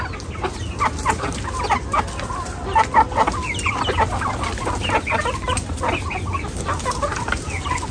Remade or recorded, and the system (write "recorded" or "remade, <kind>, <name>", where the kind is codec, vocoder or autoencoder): recorded